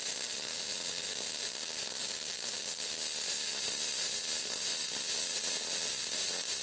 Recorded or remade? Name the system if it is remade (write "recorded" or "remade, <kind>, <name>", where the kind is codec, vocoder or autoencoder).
remade, vocoder, BigVGAN v2